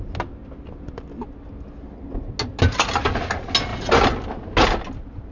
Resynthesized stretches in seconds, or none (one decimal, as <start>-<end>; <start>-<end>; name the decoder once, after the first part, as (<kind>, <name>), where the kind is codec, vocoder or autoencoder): none